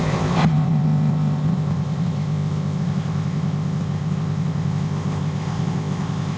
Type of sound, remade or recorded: remade